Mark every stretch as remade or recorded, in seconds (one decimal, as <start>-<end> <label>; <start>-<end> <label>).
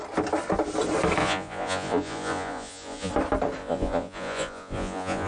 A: 0.0-1.2 recorded; 1.2-3.1 remade; 3.1-3.6 recorded; 3.6-5.3 remade